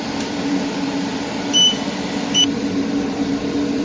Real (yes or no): no